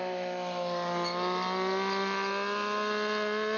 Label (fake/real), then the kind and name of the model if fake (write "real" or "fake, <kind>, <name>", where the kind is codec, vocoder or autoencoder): real